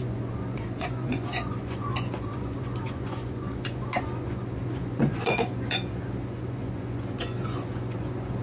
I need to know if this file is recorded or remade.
remade